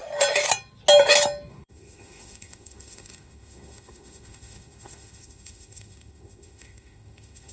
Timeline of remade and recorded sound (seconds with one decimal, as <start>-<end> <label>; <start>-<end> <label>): 0.0-1.5 recorded; 1.5-7.5 remade